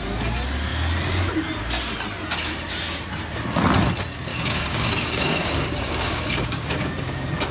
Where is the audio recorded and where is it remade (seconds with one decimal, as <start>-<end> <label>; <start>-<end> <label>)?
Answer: 0.0-4.3 recorded; 4.3-7.5 remade